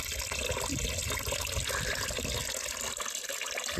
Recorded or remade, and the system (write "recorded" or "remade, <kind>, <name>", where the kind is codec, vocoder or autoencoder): recorded